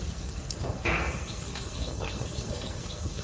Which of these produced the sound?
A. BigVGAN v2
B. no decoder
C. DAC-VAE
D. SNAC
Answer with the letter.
D